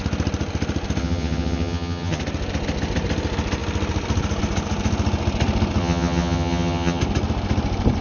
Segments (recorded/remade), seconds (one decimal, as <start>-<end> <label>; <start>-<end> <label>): 0.0-1.0 recorded; 1.0-2.2 remade; 2.2-5.8 recorded; 5.8-7.0 remade; 7.0-8.0 recorded